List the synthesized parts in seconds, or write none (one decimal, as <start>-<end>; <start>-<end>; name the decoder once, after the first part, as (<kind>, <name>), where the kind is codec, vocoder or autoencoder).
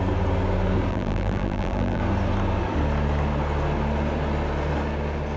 0.9-2.0 (vocoder, BigVGAN v2)